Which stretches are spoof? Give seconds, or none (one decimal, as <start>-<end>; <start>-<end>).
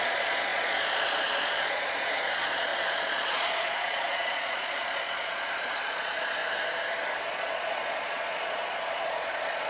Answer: 0.0-6.4; 7.3-9.7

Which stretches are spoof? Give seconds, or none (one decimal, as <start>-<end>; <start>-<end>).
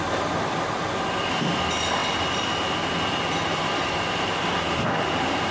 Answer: none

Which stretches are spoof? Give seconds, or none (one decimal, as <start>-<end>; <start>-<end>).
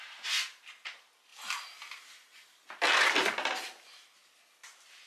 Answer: none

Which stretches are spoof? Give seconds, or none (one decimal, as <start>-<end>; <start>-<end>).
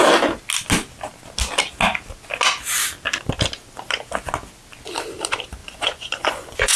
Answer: 5.6-6.8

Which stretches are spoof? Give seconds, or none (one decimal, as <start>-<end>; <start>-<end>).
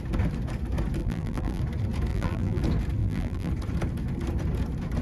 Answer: 1.0-1.6; 2.1-2.6; 3.0-3.5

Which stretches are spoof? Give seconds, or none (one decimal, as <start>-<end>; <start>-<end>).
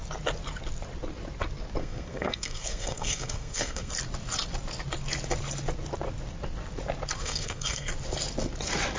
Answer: 1.8-3.9; 7.2-7.9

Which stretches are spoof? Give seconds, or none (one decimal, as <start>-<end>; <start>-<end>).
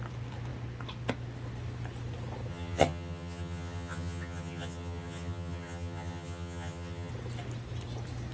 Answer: 2.5-7.1